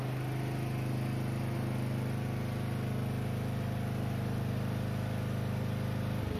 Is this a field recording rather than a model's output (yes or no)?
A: yes